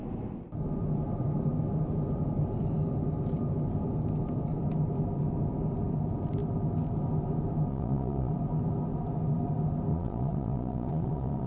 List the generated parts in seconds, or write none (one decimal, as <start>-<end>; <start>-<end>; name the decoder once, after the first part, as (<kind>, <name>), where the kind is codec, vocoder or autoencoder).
7.7-8.3 (vocoder, Vocos); 9.9-11.5